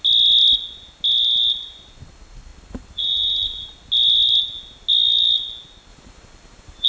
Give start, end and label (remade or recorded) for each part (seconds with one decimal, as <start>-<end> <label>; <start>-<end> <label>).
0.0-2.5 recorded; 2.5-3.7 remade; 3.7-5.9 recorded; 5.9-6.9 remade